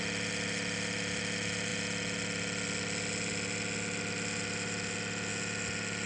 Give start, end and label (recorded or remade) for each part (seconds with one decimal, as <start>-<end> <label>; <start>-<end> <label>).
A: 0.0-6.1 recorded